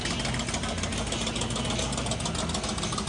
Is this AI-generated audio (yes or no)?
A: no